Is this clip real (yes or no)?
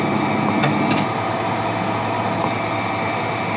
yes